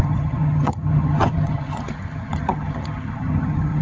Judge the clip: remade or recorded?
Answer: remade